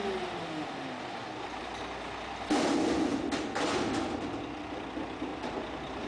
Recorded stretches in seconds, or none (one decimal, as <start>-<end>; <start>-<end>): 0.0-5.3